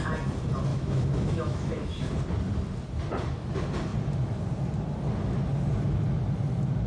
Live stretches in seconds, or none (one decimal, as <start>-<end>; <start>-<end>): 0.0-0.7; 2.1-6.9